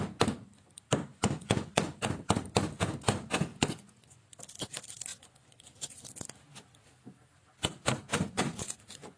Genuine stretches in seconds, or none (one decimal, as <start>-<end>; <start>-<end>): 0.0-1.1; 2.0-3.5; 4.4-5.1; 6.0-8.1